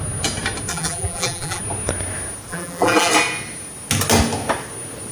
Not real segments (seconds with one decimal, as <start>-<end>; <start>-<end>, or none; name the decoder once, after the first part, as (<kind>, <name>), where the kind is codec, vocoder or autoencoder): 0.7-1.6 (vocoder, BigVGAN v2); 2.5-3.1